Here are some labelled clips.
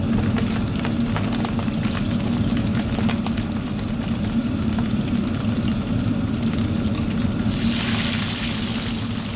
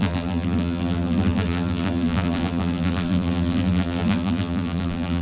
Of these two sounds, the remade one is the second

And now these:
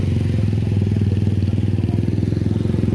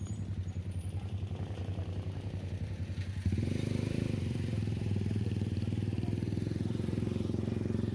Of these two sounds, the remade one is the second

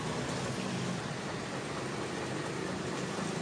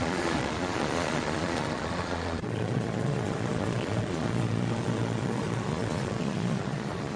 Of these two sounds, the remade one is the second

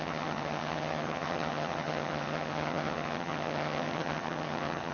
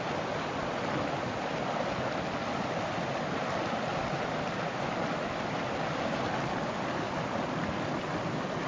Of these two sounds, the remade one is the first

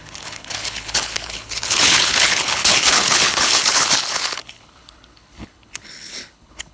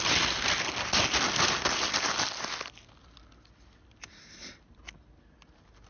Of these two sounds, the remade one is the first